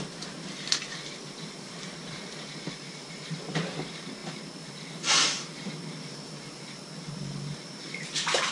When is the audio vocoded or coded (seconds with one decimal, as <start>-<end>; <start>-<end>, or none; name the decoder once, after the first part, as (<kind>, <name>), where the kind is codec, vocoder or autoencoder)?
0.0-8.5 (vocoder, BigVGAN v2)